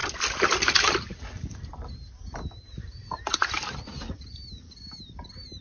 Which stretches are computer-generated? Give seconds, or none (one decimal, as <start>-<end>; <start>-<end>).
0.0-5.6